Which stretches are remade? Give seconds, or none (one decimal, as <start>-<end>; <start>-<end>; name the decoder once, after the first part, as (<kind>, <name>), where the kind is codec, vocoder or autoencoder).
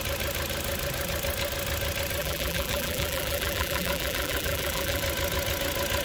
2.2-5.0 (vocoder, BigVGAN v2)